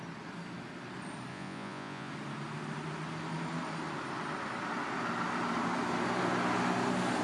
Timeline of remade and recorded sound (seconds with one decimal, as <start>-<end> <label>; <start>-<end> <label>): 0.0-1.3 recorded; 1.3-2.1 remade; 2.1-7.2 recorded